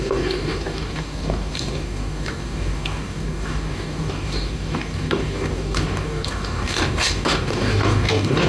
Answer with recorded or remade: remade